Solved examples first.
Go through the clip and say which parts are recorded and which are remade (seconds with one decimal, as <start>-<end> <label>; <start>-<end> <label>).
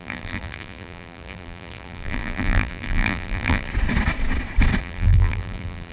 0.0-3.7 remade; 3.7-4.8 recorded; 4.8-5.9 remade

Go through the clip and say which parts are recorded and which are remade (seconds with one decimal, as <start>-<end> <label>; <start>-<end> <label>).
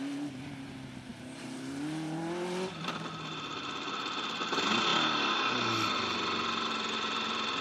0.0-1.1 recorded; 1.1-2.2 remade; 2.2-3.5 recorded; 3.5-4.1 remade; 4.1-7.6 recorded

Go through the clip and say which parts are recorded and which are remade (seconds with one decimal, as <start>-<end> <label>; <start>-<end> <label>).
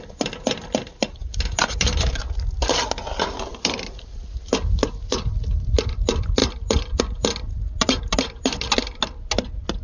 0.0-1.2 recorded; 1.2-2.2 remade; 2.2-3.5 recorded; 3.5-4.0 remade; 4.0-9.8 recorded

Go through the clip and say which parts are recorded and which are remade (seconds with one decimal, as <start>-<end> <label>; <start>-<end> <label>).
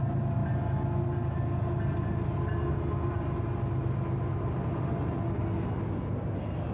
0.0-6.7 recorded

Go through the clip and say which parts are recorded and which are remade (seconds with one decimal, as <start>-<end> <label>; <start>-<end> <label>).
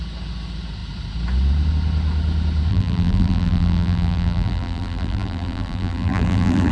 0.0-2.7 recorded; 2.7-6.7 remade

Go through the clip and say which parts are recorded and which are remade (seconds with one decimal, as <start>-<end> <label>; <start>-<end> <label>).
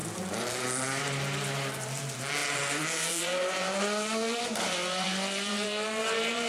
0.0-1.0 remade; 1.0-2.4 recorded; 2.4-6.5 remade